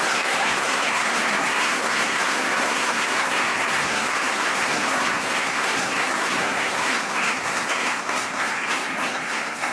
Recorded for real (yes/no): no